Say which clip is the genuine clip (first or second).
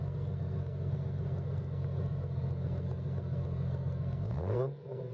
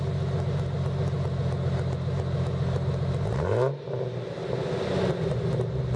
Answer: second